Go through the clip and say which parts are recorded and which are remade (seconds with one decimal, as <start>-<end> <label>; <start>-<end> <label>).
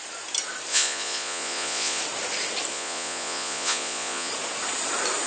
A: 0.0-0.7 recorded; 0.7-2.0 remade; 2.0-2.7 recorded; 2.7-4.3 remade; 4.3-5.3 recorded